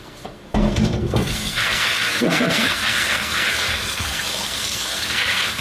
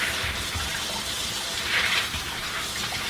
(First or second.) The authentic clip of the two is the second